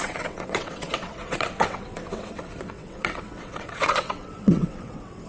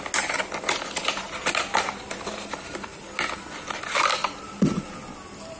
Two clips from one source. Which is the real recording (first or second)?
second